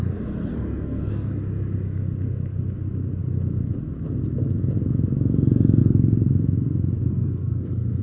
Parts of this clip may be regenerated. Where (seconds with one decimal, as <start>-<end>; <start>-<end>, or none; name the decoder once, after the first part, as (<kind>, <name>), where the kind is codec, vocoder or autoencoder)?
0.5-1.3 (codec, SNAC); 7.1-8.0